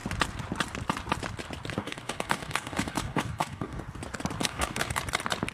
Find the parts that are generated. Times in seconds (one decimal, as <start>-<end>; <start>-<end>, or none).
1.8-3.8; 4.4-5.0